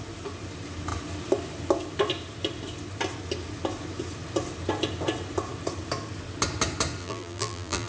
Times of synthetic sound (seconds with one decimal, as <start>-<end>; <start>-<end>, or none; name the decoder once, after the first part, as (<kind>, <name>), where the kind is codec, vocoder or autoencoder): 7.0-7.9 (vocoder, BigVGAN v2)